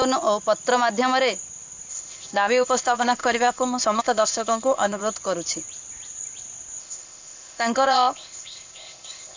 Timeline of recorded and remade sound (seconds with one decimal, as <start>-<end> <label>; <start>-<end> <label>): 0.0-1.9 recorded; 1.9-5.0 remade; 5.0-6.8 recorded; 6.8-9.4 remade